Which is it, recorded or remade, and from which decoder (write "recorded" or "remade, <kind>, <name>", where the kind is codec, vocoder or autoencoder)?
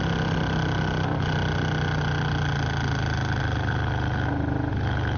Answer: recorded